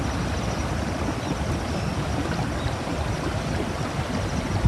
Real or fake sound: real